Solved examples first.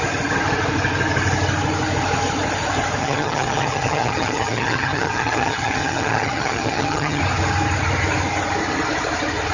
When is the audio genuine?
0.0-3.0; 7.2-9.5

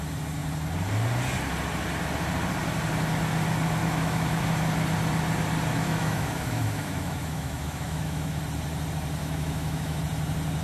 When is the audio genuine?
0.0-3.8; 4.4-5.7; 8.4-9.2; 10.0-10.6

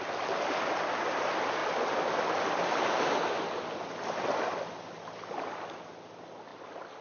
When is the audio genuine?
0.0-7.0

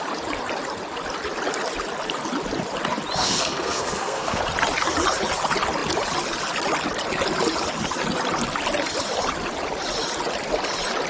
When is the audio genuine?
0.0-3.2; 4.4-11.1

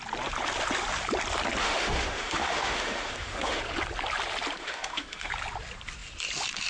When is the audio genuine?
0.0-1.6; 3.6-4.6; 5.3-6.7